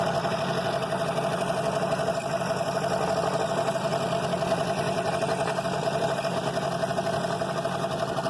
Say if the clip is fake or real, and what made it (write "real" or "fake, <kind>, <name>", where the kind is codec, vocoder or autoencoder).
real